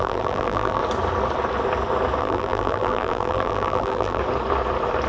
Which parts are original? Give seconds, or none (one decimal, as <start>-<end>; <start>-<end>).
0.8-2.2; 4.2-5.1